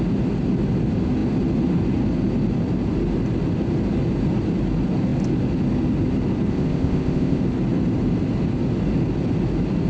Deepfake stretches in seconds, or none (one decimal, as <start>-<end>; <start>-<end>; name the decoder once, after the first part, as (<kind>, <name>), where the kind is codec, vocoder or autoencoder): 6.5-7.4 (codec, ZipCodec)